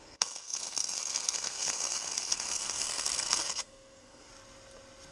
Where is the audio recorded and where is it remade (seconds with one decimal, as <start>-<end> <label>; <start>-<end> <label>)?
0.0-4.3 remade; 4.3-5.1 recorded